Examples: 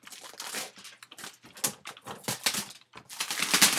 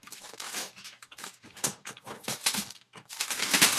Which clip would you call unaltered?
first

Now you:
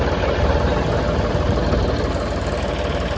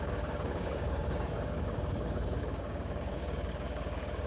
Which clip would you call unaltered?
first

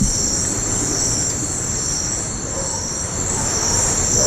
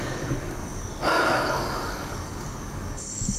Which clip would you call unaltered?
first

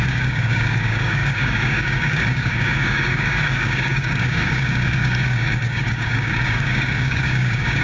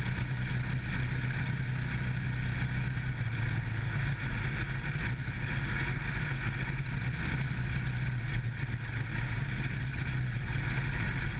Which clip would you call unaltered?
second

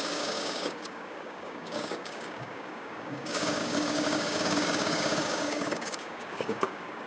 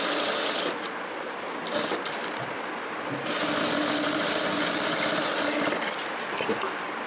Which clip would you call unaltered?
second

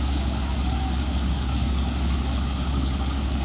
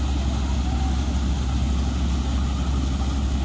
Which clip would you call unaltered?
second